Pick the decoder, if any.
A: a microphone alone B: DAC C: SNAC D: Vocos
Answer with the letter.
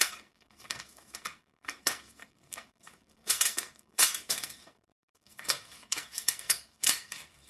C